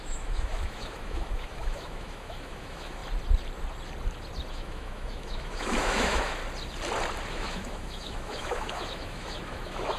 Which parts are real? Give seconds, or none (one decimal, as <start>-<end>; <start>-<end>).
3.0-4.5; 6.4-7.3